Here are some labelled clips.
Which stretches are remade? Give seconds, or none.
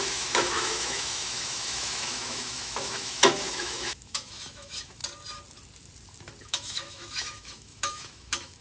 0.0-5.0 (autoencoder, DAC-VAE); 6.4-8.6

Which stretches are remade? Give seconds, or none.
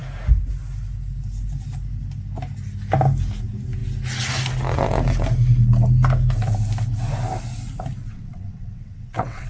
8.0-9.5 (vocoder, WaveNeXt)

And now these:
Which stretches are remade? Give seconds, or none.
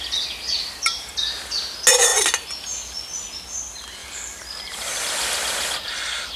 4.0-5.9 (vocoder, BigVGAN v2)